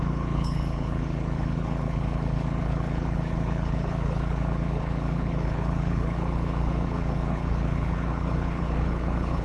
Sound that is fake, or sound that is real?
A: fake